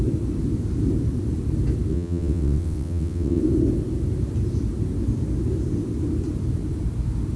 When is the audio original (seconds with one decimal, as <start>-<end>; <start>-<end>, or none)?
0.0-1.9; 3.4-7.4